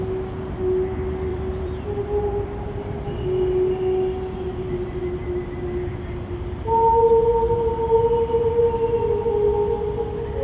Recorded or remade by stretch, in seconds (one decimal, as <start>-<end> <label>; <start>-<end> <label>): 0.0-1.3 recorded; 1.3-2.0 remade; 2.0-10.4 recorded